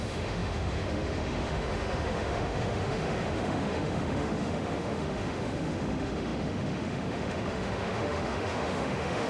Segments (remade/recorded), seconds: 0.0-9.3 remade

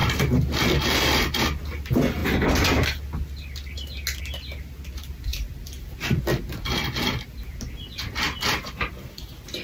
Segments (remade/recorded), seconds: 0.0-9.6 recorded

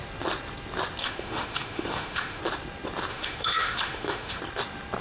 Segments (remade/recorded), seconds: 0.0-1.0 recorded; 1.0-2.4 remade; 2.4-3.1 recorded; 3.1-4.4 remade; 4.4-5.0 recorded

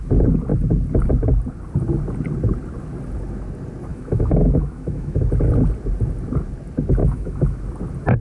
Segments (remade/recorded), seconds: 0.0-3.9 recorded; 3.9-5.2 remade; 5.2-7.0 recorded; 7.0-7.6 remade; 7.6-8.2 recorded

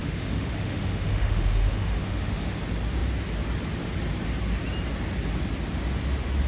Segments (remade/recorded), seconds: 0.0-2.6 remade; 2.6-6.5 recorded